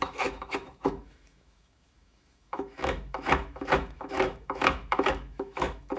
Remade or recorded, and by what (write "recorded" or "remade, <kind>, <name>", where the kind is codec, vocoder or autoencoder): remade, autoencoder, DAC-VAE